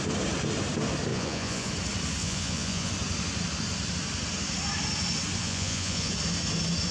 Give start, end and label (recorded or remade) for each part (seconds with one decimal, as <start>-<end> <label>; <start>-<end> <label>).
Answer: 0.0-1.1 recorded; 1.1-1.7 remade; 1.7-2.2 recorded; 2.2-2.9 remade; 2.9-5.4 recorded; 5.4-6.1 remade; 6.1-6.9 recorded